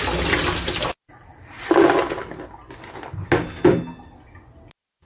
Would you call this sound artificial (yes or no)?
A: no